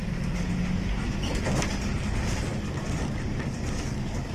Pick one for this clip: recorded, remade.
recorded